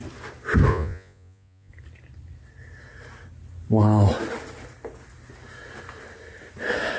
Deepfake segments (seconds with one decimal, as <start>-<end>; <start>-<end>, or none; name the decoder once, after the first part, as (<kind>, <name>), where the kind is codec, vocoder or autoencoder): 0.7-1.7 (vocoder, Vocos)

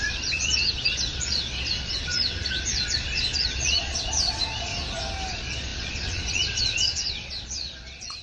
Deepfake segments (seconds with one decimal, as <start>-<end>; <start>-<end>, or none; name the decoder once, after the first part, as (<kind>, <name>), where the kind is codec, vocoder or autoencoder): 0.0-4.7 (vocoder, Vocos); 5.3-8.2